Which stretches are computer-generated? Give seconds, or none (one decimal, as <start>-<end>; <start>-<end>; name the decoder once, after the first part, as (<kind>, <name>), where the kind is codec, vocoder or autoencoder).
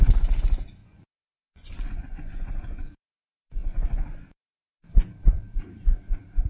0.8-2.9 (vocoder, Vocos); 3.6-4.3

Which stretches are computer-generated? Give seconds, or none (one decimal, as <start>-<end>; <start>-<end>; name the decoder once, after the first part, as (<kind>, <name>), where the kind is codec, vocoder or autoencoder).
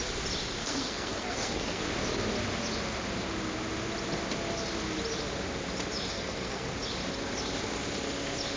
0.6-1.8 (codec, SNAC); 6.1-6.7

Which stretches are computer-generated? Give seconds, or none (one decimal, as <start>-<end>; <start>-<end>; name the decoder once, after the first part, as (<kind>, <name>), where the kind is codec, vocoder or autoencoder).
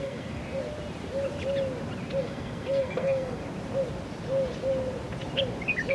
0.0-0.4 (codec, SNAC); 2.2-3.4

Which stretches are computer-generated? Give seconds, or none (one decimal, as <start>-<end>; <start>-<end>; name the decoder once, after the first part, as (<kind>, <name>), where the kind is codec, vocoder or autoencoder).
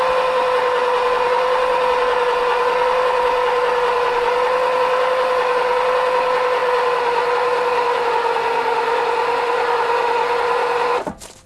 none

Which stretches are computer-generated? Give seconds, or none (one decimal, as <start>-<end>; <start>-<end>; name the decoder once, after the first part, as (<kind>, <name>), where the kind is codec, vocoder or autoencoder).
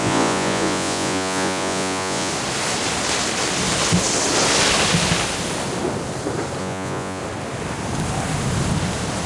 0.0-2.3 (vocoder, Vocos); 6.6-7.2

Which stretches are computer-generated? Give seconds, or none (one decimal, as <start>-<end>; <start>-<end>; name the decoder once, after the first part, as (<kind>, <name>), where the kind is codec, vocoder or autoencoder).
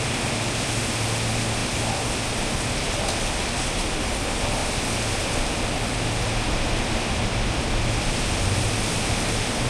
none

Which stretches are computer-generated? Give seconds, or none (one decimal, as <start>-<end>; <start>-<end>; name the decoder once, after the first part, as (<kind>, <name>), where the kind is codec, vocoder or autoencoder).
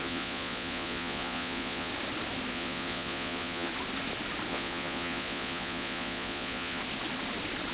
0.0-1.9 (vocoder, Vocos); 2.5-3.7; 4.5-6.8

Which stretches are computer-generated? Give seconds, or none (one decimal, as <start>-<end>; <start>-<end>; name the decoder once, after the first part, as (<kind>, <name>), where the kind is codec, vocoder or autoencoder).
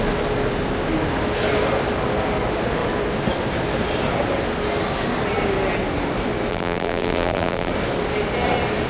6.5-7.7 (vocoder, BigVGAN v2)